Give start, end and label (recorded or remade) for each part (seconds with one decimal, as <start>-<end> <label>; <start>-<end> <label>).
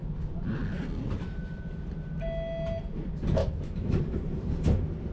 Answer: 0.0-3.4 recorded; 3.4-4.0 remade; 4.0-5.1 recorded